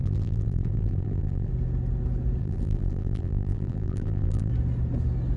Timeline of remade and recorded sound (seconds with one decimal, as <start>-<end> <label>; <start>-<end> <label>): 0.0-1.5 remade; 1.5-2.4 recorded; 2.4-4.5 remade; 4.5-5.4 recorded